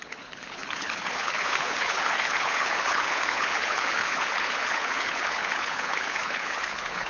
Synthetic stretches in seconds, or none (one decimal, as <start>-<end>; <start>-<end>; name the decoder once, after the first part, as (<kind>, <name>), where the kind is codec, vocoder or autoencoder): 0.0-7.1 (codec, HILCodec)